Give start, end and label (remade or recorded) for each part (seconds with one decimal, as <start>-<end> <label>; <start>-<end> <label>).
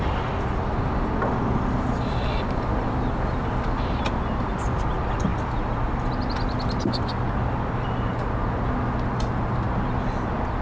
0.0-10.6 recorded